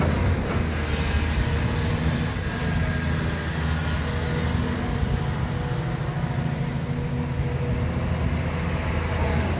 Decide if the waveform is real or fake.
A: real